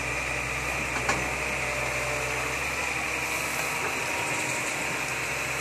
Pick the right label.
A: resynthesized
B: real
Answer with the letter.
B